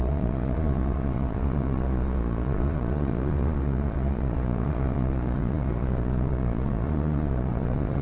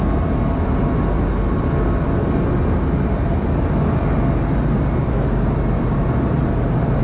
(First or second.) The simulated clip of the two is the first